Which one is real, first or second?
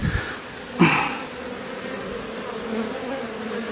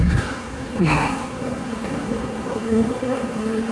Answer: first